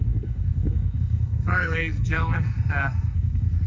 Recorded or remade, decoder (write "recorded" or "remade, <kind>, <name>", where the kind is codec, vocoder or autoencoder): remade, codec, SNAC